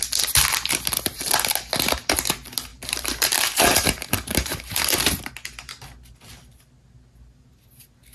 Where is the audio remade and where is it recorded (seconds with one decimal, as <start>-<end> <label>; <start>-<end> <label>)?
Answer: 0.0-2.7 recorded; 2.7-5.3 remade; 5.3-8.1 recorded